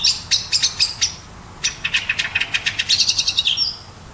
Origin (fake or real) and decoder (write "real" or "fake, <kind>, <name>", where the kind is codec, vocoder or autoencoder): real